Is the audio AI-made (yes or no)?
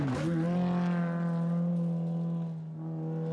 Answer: no